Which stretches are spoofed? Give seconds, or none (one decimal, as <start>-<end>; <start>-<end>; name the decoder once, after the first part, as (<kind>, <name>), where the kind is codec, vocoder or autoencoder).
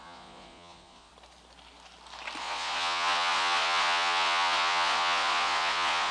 0.0-1.1 (vocoder, Vocos); 2.4-6.1